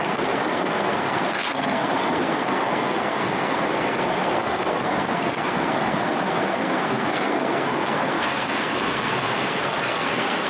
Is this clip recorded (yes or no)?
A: no